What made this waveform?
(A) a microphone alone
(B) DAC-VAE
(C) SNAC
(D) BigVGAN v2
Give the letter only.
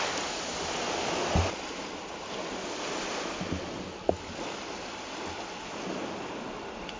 A